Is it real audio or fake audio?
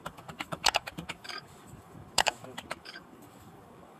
fake